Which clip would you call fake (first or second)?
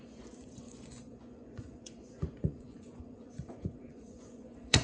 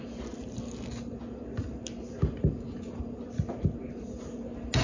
first